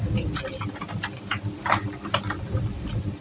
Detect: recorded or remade recorded